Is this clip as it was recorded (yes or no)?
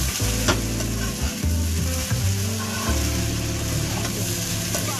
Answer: yes